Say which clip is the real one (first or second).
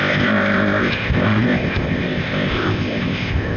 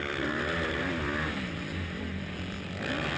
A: second